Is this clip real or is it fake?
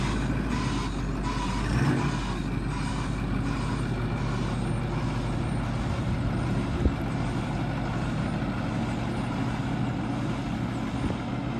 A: real